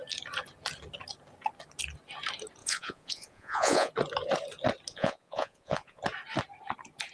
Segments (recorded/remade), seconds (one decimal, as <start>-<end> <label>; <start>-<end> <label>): 0.0-2.6 recorded; 2.6-3.9 remade; 3.9-4.9 recorded; 4.9-6.0 remade; 6.0-7.1 recorded